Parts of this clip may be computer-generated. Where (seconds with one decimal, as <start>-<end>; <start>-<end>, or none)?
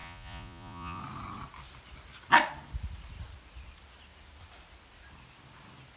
0.0-1.0